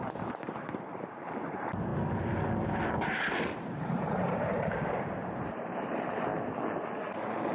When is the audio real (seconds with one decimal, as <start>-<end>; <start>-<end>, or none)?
1.9-3.7; 6.3-7.1